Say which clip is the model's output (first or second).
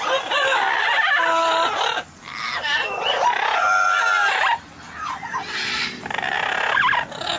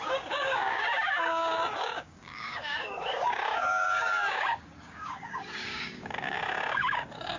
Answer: second